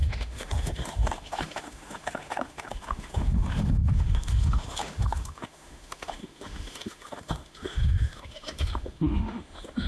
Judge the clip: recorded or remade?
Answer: remade